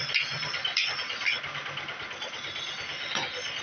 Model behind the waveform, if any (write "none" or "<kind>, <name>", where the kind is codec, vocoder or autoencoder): none